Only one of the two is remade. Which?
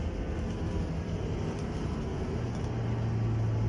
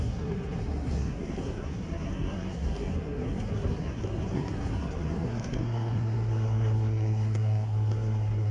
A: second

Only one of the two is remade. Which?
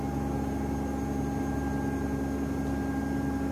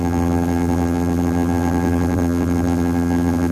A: second